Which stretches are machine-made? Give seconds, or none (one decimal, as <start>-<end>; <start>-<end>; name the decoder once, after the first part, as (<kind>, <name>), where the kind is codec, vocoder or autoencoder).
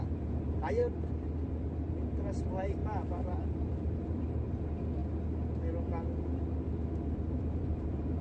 0.0-0.8 (vocoder, BigVGAN v2); 1.9-5.0; 7.4-8.2